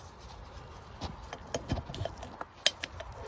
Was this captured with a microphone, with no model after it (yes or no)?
yes